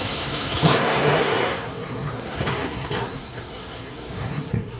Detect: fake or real fake